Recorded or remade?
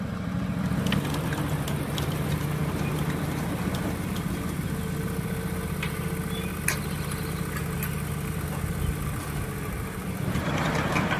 recorded